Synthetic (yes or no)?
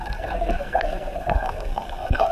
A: yes